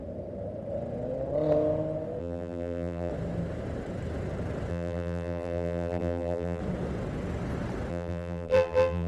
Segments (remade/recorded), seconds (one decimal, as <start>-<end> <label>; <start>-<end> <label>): 0.0-2.2 recorded; 2.2-3.1 remade; 3.1-4.7 recorded; 4.7-6.6 remade; 6.6-7.9 recorded; 7.9-9.1 remade